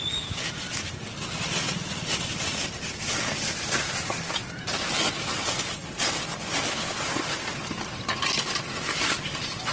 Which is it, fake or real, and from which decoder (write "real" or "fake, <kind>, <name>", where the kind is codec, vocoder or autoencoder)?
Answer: real